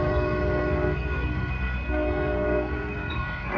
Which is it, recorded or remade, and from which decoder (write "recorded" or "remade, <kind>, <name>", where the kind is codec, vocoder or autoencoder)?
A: remade, codec, SNAC